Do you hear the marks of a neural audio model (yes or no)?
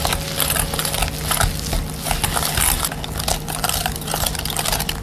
no